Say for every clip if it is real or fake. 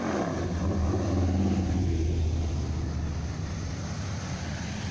real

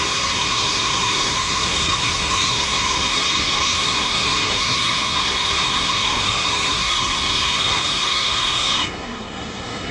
fake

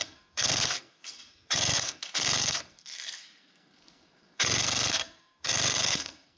fake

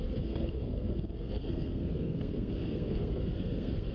fake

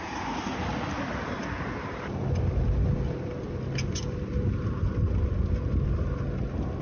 real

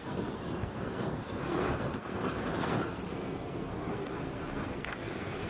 fake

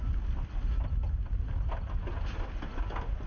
real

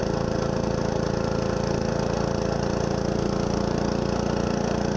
real